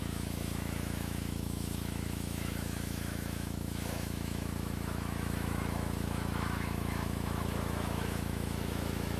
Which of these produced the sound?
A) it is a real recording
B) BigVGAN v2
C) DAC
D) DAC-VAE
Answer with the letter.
D